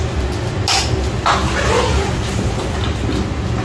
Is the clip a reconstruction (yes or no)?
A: no